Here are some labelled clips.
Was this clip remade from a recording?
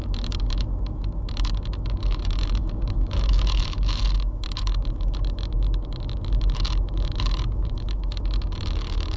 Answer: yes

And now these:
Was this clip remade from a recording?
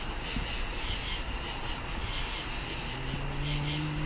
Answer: no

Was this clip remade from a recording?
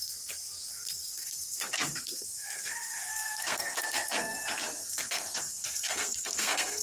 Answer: yes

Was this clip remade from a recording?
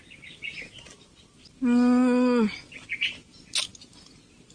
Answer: no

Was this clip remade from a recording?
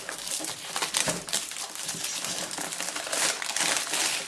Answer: yes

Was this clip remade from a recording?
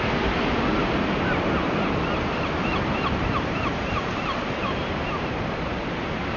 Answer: yes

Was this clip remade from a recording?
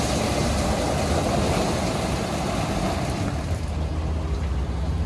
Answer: no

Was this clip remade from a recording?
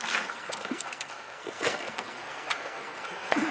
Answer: yes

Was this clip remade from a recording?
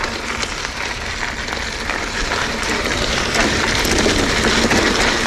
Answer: no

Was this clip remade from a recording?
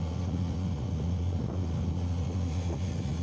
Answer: yes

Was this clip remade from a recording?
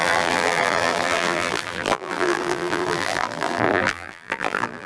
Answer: yes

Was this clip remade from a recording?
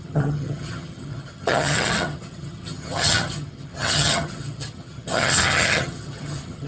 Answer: yes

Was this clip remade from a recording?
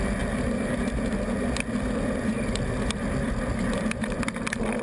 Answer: no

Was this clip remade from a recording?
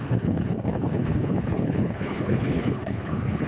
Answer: yes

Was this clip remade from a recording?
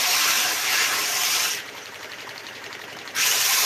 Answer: yes